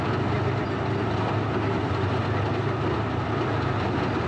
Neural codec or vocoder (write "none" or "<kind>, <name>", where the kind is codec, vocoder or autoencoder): none